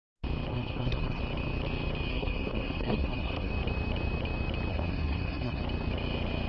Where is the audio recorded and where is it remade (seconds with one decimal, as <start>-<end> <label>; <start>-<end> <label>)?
0.0-0.5 recorded; 0.5-1.2 remade; 1.2-2.1 recorded; 2.1-3.5 remade; 3.5-4.7 recorded; 4.7-5.6 remade; 5.6-6.5 recorded